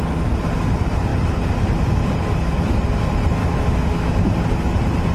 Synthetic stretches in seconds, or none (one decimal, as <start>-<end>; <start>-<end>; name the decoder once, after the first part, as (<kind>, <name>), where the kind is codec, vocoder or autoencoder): 3.4-4.3 (autoencoder, DAC-VAE)